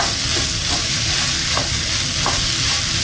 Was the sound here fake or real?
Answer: real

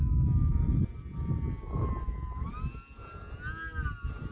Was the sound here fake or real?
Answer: real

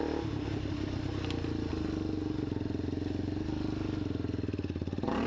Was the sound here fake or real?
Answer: real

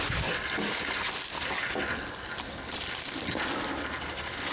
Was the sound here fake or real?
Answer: real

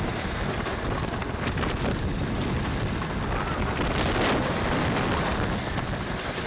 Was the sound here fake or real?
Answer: real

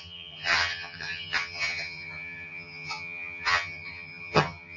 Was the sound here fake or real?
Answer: fake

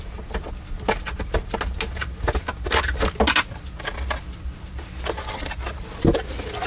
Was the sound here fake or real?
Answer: real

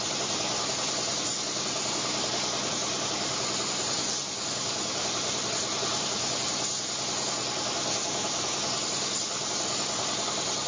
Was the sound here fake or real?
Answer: real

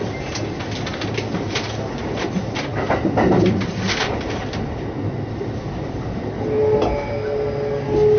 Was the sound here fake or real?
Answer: real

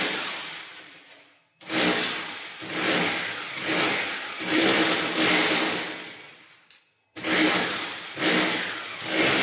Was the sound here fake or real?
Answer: real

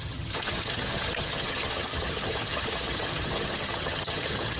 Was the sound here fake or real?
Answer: fake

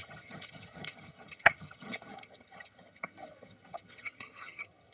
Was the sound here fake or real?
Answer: fake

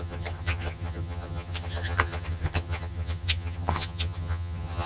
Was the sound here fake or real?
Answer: fake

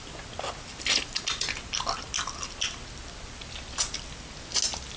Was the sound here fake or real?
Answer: real